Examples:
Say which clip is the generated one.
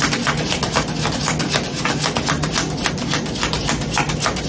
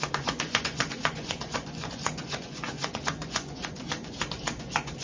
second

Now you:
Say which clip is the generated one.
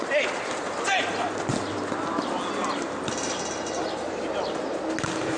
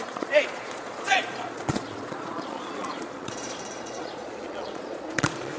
second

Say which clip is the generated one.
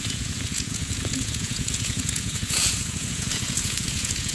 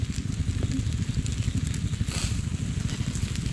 first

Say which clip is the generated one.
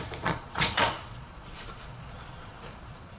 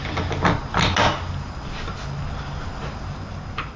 first